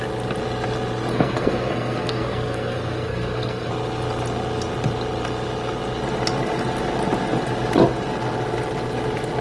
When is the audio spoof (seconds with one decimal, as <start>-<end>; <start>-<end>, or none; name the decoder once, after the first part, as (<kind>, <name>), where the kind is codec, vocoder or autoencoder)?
1.1-3.7 (codec, SNAC)